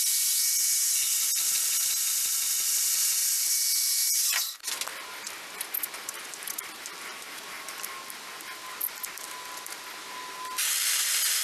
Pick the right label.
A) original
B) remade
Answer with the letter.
A